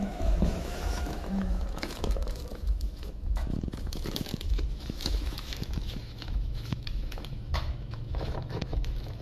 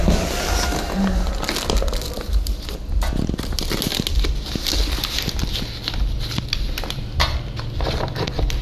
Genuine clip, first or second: second